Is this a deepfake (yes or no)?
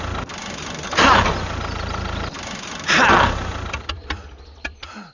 no